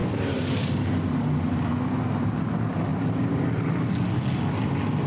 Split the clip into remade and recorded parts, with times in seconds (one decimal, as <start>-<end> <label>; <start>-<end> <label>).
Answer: 0.0-0.8 remade; 0.8-2.9 recorded; 2.9-3.9 remade; 3.9-5.1 recorded